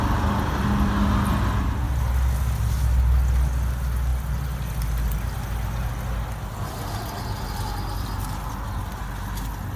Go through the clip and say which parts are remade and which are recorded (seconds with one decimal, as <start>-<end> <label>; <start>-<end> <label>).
0.0-9.8 recorded